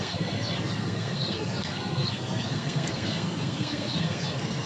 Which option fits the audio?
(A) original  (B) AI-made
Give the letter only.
B